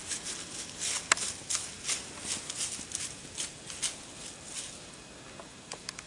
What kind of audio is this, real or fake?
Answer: real